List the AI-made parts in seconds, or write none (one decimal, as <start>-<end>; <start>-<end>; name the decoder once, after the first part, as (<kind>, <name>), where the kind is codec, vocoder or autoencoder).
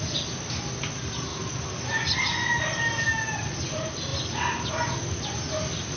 1.3-2.0 (vocoder, BigVGAN v2)